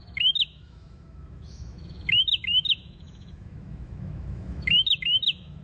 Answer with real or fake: fake